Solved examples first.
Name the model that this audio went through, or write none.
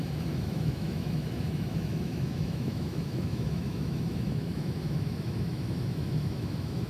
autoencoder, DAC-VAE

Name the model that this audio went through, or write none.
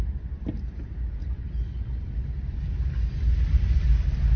none